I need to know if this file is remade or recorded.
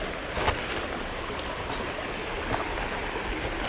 recorded